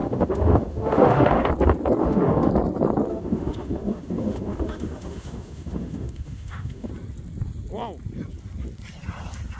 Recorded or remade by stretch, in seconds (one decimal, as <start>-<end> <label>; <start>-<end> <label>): 0.0-1.5 remade; 1.5-2.0 recorded; 2.0-2.5 remade; 2.5-3.1 recorded; 3.1-6.9 remade; 6.9-9.6 recorded